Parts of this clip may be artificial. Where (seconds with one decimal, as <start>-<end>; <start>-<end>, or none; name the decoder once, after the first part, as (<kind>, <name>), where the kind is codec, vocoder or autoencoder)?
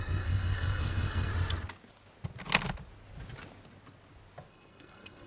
0.0-1.3 (codec, SNAC); 4.5-5.3